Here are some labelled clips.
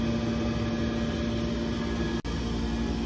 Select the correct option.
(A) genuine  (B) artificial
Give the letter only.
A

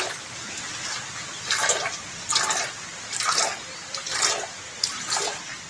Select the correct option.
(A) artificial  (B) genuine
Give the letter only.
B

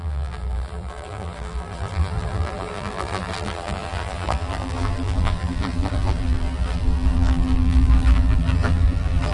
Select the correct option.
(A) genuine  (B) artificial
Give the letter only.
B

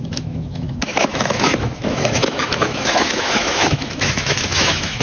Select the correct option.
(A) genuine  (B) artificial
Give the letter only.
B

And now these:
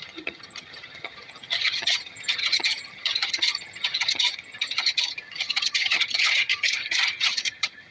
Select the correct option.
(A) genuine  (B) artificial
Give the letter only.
B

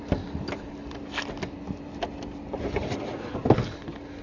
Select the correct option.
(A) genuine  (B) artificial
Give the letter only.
A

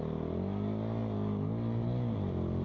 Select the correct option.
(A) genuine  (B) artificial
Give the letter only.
A